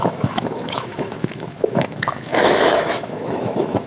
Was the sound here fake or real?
fake